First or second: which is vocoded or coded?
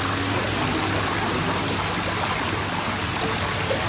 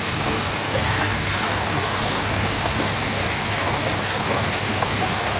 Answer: second